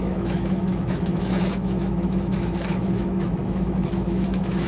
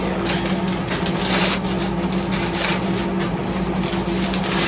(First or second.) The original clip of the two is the second